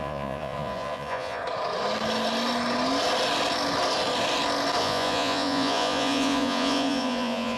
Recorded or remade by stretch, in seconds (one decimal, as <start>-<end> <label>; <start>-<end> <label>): 0.0-1.4 remade; 1.4-4.8 recorded; 4.8-7.6 remade